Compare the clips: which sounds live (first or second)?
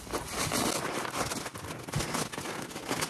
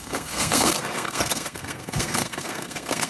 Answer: first